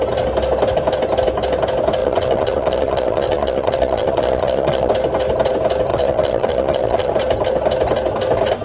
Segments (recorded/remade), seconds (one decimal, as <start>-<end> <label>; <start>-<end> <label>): 0.0-2.0 recorded; 2.0-4.9 remade; 4.9-5.9 recorded; 5.9-7.1 remade; 7.1-8.6 recorded